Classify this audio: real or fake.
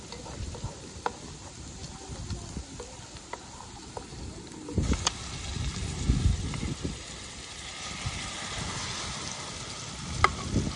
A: real